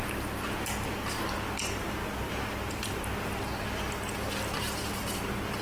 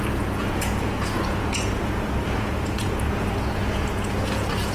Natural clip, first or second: first